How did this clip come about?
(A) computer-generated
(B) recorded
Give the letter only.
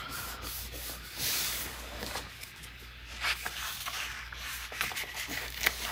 A